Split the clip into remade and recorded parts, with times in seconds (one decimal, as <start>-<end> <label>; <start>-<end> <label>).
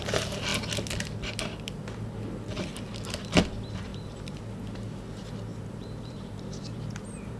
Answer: 0.0-3.9 recorded; 3.9-4.4 remade; 4.4-5.5 recorded; 5.5-7.4 remade